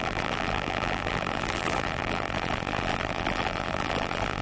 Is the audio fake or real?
fake